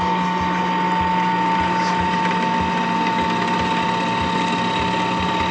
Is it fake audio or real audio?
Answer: real